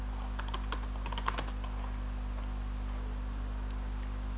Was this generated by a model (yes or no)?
no